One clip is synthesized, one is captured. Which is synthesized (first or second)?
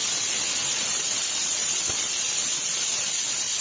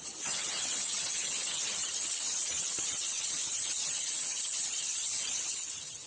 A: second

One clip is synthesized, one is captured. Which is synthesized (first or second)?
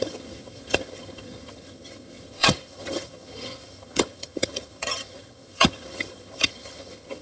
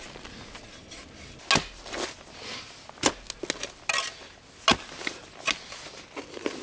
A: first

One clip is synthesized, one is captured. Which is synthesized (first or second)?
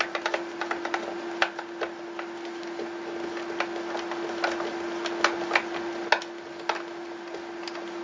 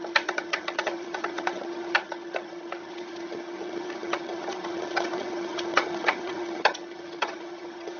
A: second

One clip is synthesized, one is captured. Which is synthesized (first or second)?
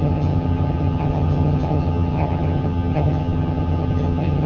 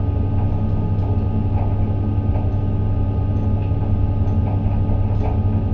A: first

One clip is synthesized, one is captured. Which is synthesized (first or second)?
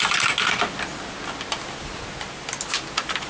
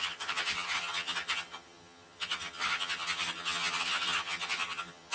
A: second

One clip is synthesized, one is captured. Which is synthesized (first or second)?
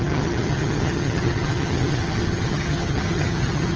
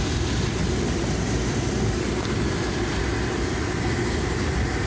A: first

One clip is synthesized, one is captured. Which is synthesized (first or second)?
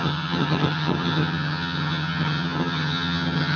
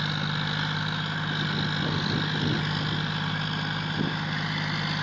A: first